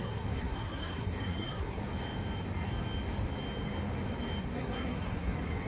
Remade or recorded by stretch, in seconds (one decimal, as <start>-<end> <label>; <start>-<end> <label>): 0.0-1.8 remade; 1.8-4.4 recorded; 4.4-5.7 remade